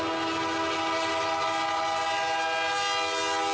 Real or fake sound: real